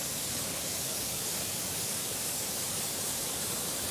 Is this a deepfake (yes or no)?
yes